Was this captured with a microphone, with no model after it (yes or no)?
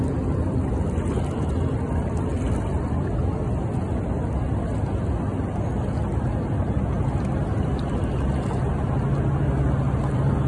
yes